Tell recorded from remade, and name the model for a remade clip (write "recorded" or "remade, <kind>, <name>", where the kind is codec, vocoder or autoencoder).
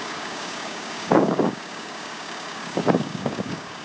remade, codec, DAC